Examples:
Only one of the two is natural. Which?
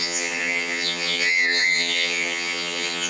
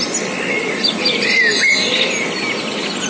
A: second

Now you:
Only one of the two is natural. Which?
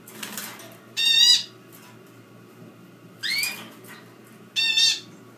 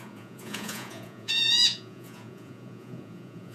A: first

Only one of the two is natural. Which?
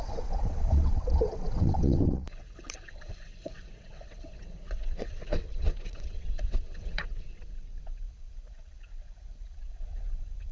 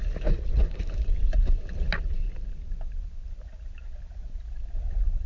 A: second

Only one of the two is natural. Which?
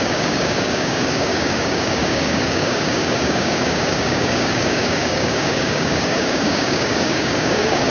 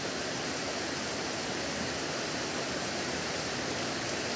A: second